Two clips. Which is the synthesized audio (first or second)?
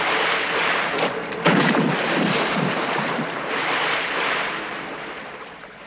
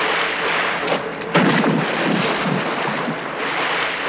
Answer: first